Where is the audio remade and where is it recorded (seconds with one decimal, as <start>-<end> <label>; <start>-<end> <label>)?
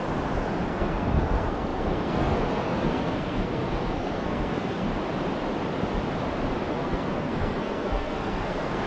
0.0-0.7 recorded; 0.7-4.9 remade; 4.9-6.7 recorded; 6.7-8.9 remade